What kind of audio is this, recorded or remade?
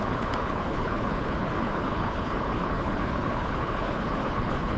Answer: remade